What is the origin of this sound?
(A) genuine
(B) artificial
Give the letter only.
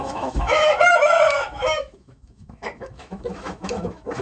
B